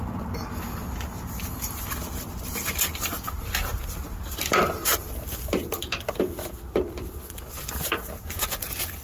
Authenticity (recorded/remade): recorded